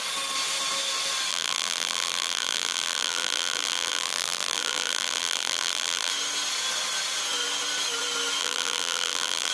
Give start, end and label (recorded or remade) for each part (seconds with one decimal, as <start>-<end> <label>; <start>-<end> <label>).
0.0-1.3 recorded; 1.3-6.1 remade; 6.1-8.4 recorded; 8.4-9.5 remade